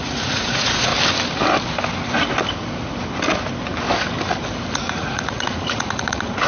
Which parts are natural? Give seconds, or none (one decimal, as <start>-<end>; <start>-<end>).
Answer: 0.9-4.7